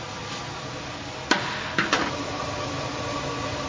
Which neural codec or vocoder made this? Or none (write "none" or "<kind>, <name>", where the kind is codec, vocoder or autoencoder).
none